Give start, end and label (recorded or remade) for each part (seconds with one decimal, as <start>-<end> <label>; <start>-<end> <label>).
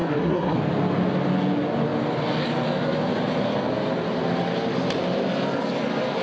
0.0-0.6 remade; 0.6-6.2 recorded